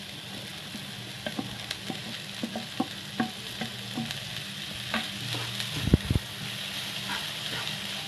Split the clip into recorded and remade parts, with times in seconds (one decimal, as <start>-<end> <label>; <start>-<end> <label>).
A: 0.0-8.1 recorded